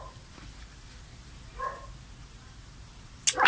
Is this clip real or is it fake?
real